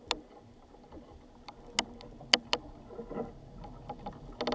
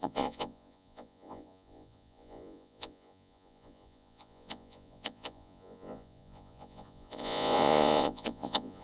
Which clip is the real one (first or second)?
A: first